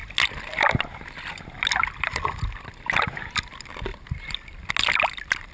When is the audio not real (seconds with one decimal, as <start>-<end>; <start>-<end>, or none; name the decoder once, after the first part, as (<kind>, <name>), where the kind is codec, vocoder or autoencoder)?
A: none

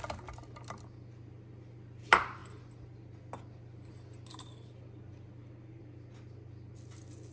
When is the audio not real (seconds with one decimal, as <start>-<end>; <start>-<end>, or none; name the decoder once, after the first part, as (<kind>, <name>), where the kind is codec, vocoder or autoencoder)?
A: none

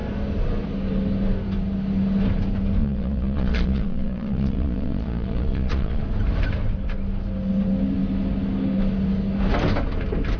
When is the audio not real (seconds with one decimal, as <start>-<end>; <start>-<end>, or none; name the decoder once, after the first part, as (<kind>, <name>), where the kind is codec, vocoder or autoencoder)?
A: 2.8-6.0 (vocoder, Vocos)